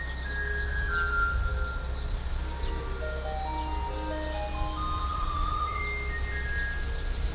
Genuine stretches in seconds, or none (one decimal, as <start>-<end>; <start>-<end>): 0.0-5.1; 5.8-7.3